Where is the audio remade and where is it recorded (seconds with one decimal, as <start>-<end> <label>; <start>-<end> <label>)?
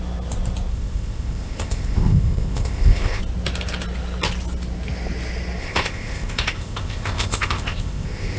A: 0.0-0.7 recorded; 0.7-3.2 remade; 3.2-5.6 recorded; 5.6-8.4 remade